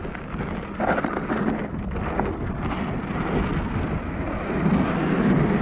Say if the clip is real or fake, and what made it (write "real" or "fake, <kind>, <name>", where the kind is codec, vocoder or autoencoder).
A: real